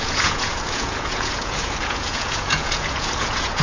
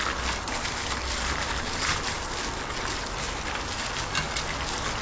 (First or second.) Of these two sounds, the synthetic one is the first